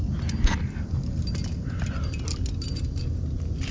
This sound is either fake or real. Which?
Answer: real